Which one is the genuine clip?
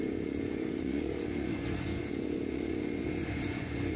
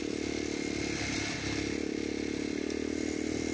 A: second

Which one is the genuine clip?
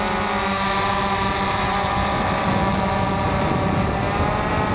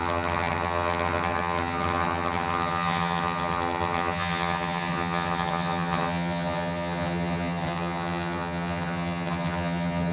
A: first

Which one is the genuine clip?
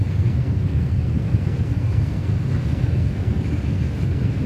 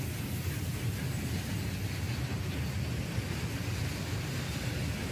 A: second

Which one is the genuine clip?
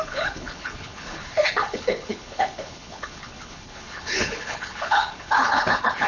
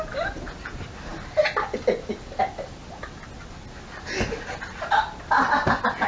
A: second